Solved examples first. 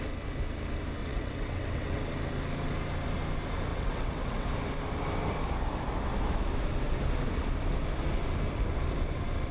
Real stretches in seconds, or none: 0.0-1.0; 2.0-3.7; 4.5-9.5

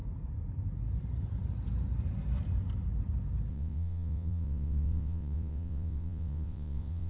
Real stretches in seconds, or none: 0.0-3.5